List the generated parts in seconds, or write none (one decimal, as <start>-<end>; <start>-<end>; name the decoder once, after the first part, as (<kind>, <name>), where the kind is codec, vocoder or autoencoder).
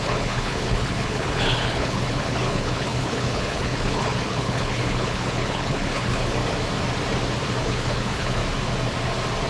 0.0-6.4 (codec, HILCodec); 7.6-8.4